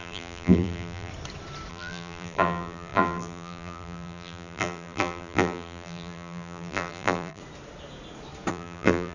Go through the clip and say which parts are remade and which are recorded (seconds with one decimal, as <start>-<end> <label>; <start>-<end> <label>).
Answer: 0.0-1.1 remade; 1.1-1.7 recorded; 1.7-7.4 remade; 7.4-8.5 recorded; 8.5-9.1 remade